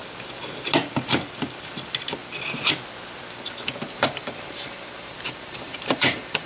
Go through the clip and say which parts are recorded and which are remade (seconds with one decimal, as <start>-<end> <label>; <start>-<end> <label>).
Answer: 0.0-3.9 recorded; 3.9-6.5 remade

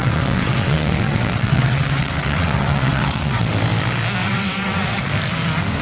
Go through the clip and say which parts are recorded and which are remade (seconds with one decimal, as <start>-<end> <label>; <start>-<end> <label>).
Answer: 0.0-3.5 remade; 3.5-4.2 recorded; 4.2-5.1 remade; 5.1-5.8 recorded

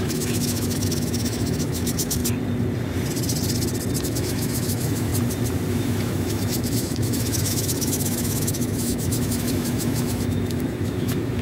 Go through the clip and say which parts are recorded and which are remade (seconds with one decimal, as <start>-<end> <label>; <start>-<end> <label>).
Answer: 0.0-2.2 remade; 2.2-4.0 recorded; 4.0-5.1 remade; 5.1-5.7 recorded; 5.7-11.4 remade

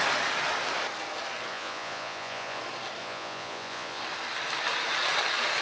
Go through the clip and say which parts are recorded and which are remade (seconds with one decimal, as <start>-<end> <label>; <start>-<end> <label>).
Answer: 0.0-1.5 recorded; 1.5-2.6 remade; 2.6-3.0 recorded; 3.0-4.0 remade; 4.0-5.6 recorded

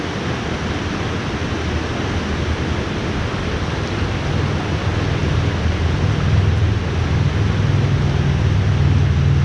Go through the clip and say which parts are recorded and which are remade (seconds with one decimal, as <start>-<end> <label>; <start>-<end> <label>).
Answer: 0.0-5.2 recorded; 5.2-7.3 remade; 7.3-9.4 recorded

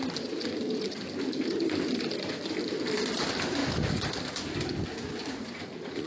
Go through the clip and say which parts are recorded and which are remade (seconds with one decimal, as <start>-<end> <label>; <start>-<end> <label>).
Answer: 0.0-5.2 recorded; 5.2-6.1 remade